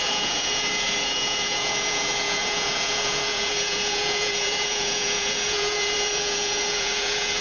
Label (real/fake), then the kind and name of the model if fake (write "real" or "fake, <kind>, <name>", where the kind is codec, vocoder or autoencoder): fake, vocoder, Vocos